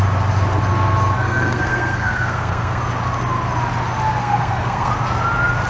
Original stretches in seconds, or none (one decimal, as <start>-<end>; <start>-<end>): 0.0-1.2; 2.8-4.2; 4.9-5.7